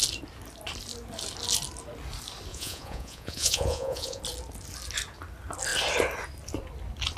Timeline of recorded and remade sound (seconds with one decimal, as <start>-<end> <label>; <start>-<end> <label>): 0.0-2.5 recorded; 2.5-4.2 remade; 4.2-7.2 recorded